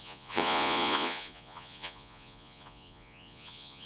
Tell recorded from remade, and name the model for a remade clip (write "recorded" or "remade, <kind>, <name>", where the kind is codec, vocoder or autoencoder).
remade, vocoder, Vocos